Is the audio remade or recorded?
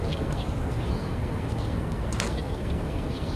remade